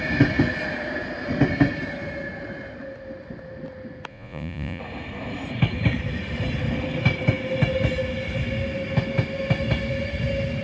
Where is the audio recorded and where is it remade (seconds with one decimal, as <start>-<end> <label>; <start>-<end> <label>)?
0.0-4.1 recorded; 4.1-4.8 remade; 4.8-10.6 recorded